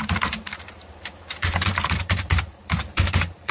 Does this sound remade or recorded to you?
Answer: remade